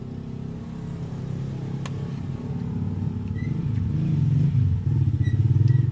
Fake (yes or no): no